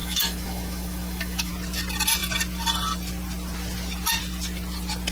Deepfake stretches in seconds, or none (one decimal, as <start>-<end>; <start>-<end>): 0.0-1.5